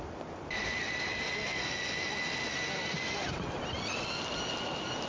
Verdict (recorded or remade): recorded